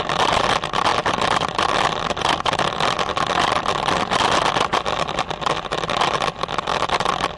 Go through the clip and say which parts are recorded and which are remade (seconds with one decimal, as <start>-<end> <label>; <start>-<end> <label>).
0.0-0.9 recorded; 0.9-1.7 remade; 1.7-6.7 recorded; 6.7-7.4 remade